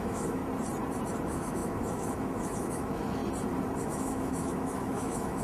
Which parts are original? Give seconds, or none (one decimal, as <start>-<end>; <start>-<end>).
0.4-1.2; 3.2-3.8